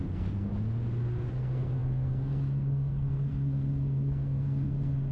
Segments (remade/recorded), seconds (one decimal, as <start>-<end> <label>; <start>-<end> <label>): 0.0-0.5 remade; 0.5-1.3 recorded; 1.3-5.1 remade